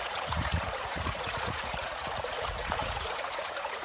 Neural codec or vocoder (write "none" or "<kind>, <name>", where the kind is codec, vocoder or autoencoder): vocoder, Vocos